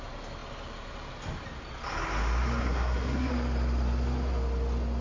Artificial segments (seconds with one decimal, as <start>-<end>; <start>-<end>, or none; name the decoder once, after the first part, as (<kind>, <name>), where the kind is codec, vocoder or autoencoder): 2.6-3.3 (codec, SNAC)